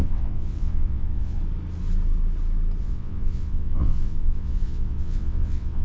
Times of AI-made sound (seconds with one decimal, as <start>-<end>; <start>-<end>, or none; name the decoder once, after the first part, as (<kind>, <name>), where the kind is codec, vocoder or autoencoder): 0.0-1.4 (vocoder, WaveNeXt); 2.8-5.8